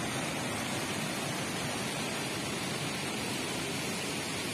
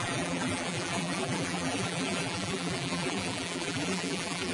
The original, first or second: first